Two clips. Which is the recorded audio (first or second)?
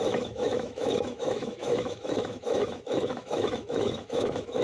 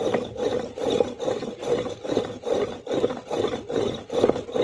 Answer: second